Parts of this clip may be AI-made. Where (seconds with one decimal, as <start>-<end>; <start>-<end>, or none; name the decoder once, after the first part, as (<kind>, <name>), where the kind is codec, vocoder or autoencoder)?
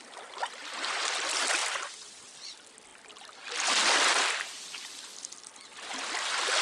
none